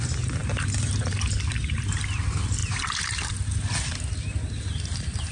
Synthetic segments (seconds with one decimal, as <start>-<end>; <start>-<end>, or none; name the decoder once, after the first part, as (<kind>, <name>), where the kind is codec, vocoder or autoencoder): 2.6-3.3 (vocoder, BigVGAN v2)